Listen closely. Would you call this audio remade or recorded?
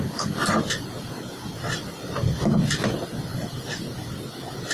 recorded